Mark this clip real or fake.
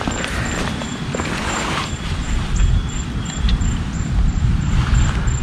real